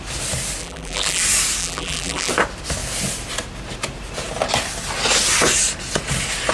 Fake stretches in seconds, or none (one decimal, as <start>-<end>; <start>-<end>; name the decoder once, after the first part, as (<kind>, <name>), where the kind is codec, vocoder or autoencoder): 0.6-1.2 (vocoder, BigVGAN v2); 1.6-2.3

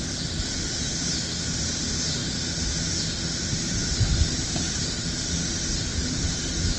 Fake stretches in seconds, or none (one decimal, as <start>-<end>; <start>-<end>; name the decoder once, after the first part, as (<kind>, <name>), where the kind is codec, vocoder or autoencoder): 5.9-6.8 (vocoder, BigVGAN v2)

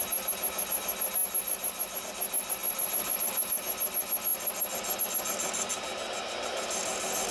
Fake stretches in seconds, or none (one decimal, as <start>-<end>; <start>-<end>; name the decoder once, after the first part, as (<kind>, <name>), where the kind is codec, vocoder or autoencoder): 2.6-3.2 (vocoder, BigVGAN v2)

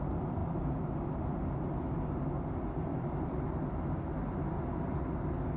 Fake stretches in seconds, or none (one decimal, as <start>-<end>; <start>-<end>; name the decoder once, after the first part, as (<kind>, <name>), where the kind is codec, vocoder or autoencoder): 2.9-3.4 (vocoder, BigVGAN v2)

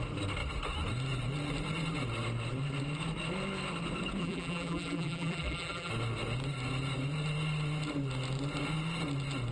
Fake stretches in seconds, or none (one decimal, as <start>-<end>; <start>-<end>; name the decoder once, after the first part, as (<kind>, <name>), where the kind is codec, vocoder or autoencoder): 4.2-5.9 (vocoder, BigVGAN v2)